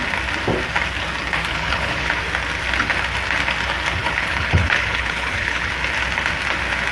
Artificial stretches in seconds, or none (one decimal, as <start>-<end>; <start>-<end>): 1.5-2.1; 4.0-5.7